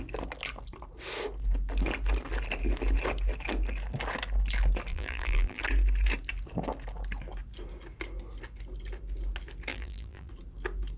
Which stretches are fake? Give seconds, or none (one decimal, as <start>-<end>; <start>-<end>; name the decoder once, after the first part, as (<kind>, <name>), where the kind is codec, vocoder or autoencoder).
4.9-5.6 (vocoder, BigVGAN v2); 9.7-10.3

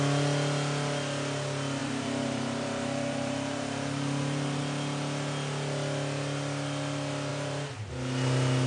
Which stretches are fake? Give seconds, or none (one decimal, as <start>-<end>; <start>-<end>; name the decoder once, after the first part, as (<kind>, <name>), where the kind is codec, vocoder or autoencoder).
1.8-4.6 (vocoder, BigVGAN v2); 7.3-7.9

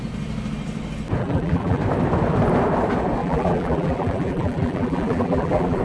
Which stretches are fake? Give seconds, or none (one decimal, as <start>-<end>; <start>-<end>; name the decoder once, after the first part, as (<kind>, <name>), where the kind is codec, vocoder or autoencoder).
1.2-1.8 (vocoder, BigVGAN v2); 3.2-5.8

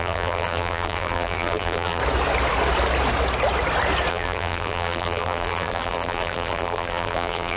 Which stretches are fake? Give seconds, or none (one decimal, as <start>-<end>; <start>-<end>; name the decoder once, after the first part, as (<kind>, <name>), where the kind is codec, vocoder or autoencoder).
0.0-2.0 (vocoder, BigVGAN v2); 4.1-7.6

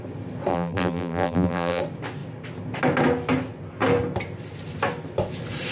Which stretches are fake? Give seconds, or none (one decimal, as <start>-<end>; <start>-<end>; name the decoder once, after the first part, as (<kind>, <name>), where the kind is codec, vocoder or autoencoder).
0.5-1.8 (vocoder, BigVGAN v2)